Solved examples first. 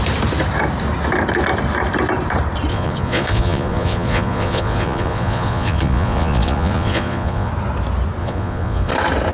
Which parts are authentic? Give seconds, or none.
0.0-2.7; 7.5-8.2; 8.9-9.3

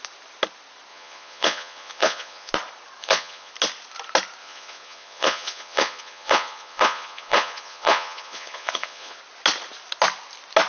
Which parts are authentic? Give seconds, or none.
0.0-0.9; 2.5-3.0; 3.5-4.4; 9.2-10.7

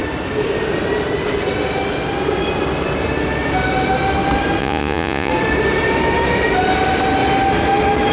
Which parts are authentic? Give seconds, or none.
0.0-4.6; 5.3-8.1

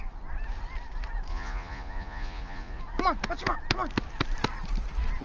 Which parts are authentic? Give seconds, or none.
0.0-1.3; 2.8-5.2

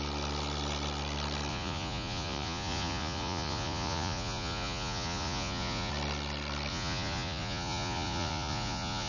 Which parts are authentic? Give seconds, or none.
0.0-1.5; 5.9-6.7